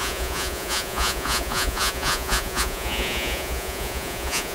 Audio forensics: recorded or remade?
remade